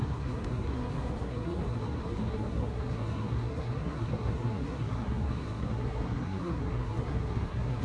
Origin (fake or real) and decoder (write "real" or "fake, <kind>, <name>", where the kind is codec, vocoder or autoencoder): fake, codec, SNAC